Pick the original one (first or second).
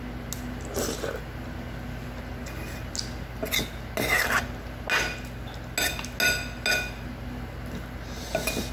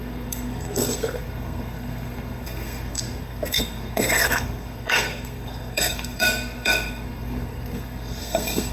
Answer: first